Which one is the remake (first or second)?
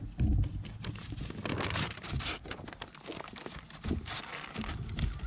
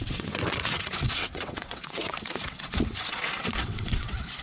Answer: second